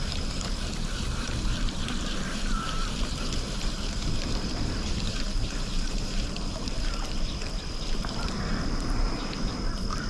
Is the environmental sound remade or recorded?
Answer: remade